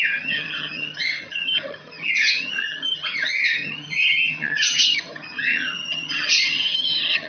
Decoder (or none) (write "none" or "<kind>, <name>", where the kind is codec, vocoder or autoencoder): vocoder, HiFi-GAN